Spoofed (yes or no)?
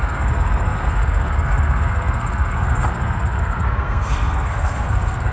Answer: yes